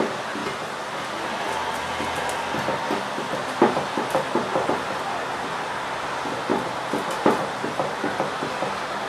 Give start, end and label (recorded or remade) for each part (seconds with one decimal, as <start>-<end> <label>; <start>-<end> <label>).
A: 0.0-6.5 recorded; 6.5-7.4 remade; 7.4-9.1 recorded